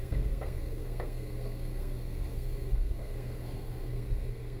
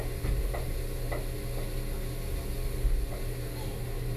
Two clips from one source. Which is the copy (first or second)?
first